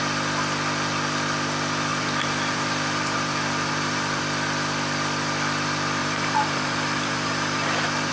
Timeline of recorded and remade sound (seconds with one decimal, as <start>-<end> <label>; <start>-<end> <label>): 0.0-1.9 recorded; 1.9-4.2 remade; 4.2-6.0 recorded; 6.0-8.1 remade